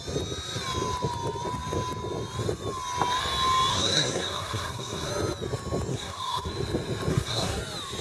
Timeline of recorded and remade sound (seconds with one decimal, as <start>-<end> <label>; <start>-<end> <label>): 0.0-3.7 recorded; 3.7-5.1 remade; 5.1-5.9 recorded; 5.9-6.5 remade; 6.5-7.1 recorded; 7.1-7.6 remade; 7.6-8.0 recorded